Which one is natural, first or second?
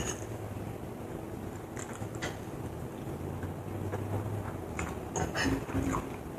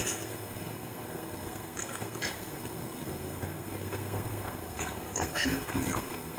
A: first